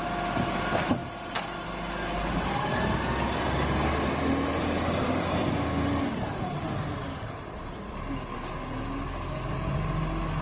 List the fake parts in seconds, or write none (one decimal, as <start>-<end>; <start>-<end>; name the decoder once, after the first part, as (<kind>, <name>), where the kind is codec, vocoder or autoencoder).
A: none